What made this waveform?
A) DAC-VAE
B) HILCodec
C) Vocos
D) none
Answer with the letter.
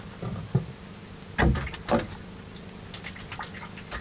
D